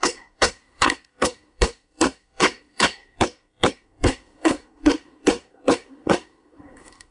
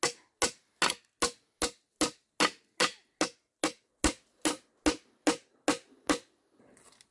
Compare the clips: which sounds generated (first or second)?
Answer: first